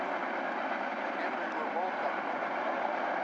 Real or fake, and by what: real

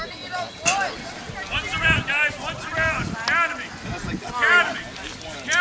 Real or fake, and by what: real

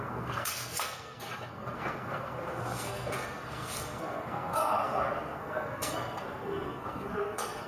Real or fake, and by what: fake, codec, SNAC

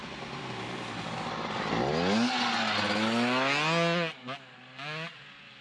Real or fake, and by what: real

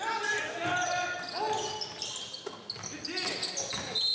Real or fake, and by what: real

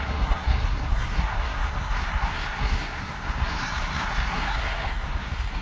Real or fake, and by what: fake, codec, SNAC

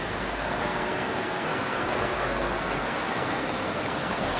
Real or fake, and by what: fake, codec, SNAC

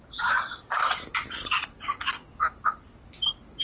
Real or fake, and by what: real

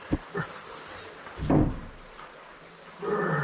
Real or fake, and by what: real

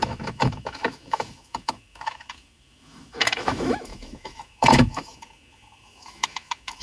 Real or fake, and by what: fake, autoencoder, DAC-VAE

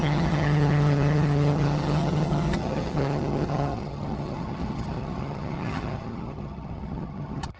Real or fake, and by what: fake, vocoder, HiFi-GAN